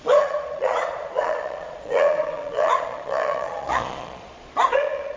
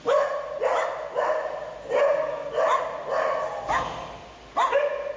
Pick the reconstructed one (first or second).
first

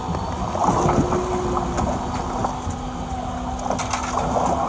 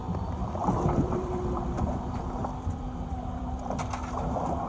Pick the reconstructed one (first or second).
second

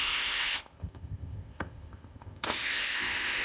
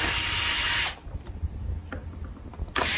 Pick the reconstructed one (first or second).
first